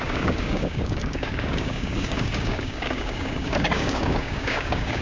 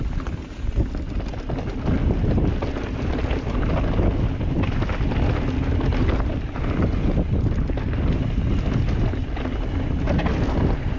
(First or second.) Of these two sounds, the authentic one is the second